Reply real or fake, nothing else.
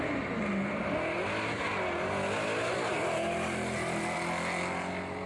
real